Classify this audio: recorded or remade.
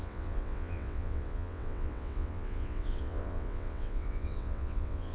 remade